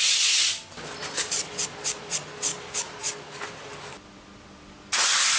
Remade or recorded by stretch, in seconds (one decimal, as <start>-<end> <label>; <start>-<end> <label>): 0.0-5.4 recorded